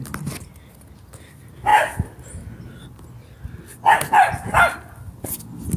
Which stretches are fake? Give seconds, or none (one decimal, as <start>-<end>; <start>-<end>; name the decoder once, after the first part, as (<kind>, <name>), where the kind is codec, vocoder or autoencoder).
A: none